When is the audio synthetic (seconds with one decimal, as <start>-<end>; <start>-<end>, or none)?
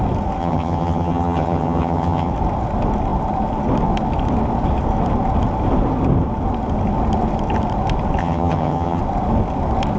0.4-2.3; 8.2-9.0